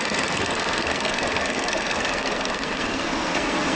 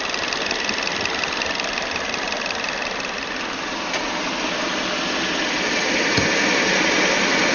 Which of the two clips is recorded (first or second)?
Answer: second